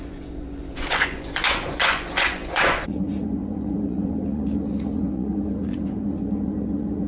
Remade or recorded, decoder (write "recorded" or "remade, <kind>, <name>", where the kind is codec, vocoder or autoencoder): remade, vocoder, Vocos